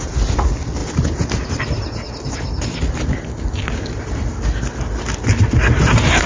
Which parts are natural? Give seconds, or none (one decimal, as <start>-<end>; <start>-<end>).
0.0-6.3